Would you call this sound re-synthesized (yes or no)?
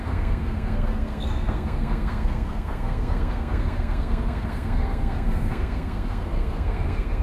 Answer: yes